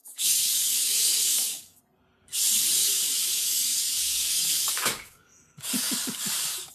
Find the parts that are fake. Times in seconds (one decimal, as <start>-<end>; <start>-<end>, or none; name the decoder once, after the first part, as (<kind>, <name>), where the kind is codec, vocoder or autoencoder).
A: 0.0-1.8 (codec, DAC); 2.8-6.7